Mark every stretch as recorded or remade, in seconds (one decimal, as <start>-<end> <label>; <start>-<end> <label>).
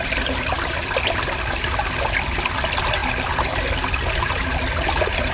0.0-5.3 recorded